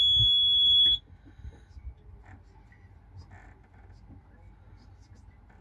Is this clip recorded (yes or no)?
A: yes